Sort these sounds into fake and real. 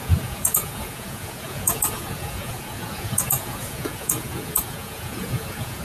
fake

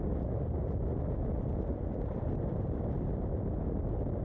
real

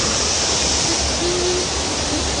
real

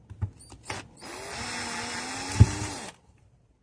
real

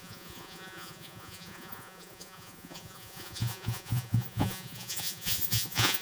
fake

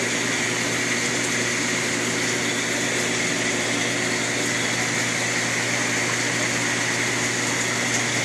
real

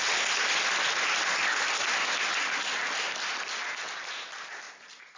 real